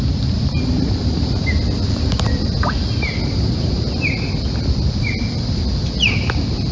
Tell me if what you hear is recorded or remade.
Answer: recorded